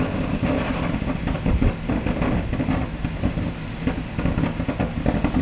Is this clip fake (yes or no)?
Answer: no